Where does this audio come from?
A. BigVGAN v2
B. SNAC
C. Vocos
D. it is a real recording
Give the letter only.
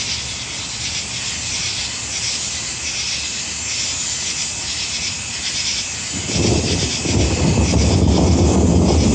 D